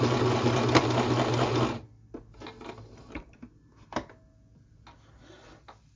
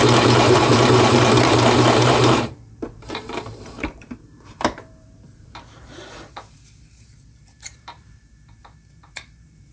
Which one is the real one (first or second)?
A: first